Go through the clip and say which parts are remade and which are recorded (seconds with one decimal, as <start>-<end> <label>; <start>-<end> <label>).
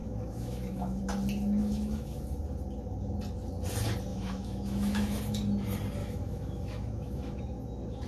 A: 0.0-1.0 remade; 1.0-1.6 recorded; 1.6-2.2 remade; 2.2-4.1 recorded; 4.1-5.2 remade; 5.2-6.0 recorded; 6.0-7.4 remade; 7.4-8.1 recorded